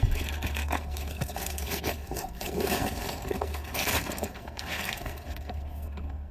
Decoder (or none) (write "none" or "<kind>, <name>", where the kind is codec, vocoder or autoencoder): codec, SNAC